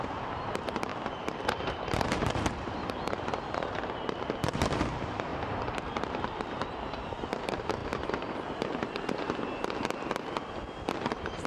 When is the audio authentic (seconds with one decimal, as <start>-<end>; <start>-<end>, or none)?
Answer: 0.9-1.7; 5.3-5.8; 7.8-10.9